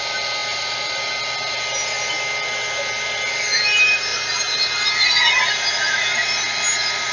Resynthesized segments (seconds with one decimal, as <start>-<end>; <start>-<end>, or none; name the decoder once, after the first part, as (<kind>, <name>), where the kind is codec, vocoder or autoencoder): none